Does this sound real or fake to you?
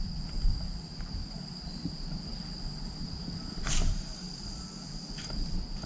real